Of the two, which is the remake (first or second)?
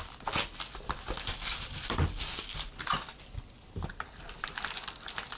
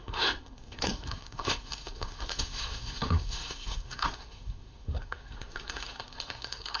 second